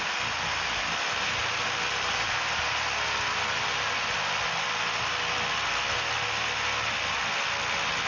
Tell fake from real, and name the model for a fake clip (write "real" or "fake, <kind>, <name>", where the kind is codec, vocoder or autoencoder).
real